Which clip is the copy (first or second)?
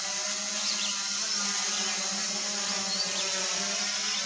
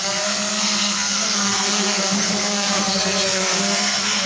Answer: second